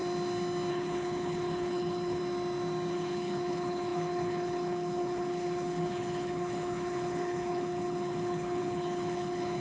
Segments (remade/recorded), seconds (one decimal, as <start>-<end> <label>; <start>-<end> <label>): 0.0-0.7 recorded; 0.7-2.2 remade; 2.2-2.9 recorded; 2.9-9.6 remade